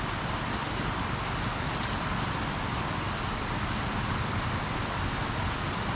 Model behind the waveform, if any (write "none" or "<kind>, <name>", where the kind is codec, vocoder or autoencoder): none